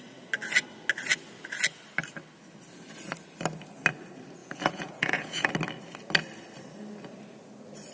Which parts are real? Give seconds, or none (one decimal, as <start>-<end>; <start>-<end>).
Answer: 0.0-4.4; 5.5-7.9